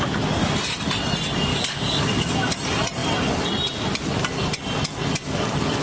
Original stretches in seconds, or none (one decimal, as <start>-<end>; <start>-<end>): 0.0-1.5; 2.3-5.8